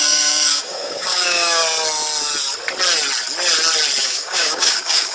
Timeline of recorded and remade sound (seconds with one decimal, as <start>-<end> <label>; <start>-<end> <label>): 0.0-1.6 remade; 1.6-4.0 recorded; 4.0-5.1 remade